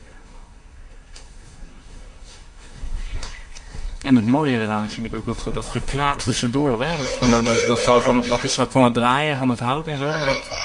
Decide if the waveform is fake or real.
fake